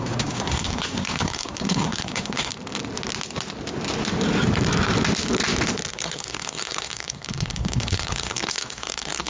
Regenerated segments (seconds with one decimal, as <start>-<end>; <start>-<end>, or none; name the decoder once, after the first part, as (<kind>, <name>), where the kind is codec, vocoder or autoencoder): 0.0-2.5 (codec, SNAC); 5.9-9.3